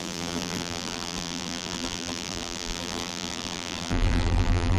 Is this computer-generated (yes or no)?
yes